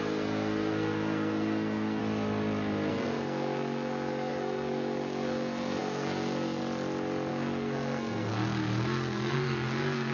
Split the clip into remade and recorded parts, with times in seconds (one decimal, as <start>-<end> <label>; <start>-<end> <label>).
0.0-2.0 remade; 2.0-2.9 recorded; 2.9-6.6 remade; 6.6-7.3 recorded; 7.3-10.1 remade